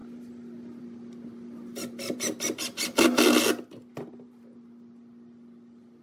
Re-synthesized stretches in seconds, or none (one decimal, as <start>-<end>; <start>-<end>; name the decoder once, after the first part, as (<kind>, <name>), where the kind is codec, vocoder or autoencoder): none